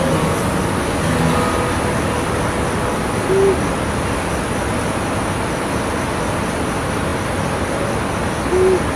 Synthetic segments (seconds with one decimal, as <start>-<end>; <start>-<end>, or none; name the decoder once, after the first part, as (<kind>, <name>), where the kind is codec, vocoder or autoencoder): none